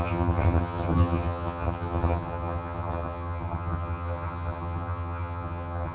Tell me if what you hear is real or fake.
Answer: fake